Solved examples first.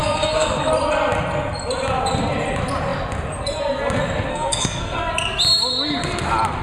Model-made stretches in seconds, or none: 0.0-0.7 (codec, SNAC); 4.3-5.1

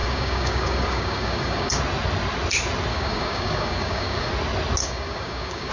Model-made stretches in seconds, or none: 0.0-1.8 (codec, DAC); 2.9-4.3; 4.8-5.7

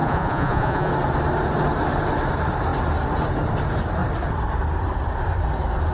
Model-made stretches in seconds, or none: 0.0-0.9 (vocoder, Vocos)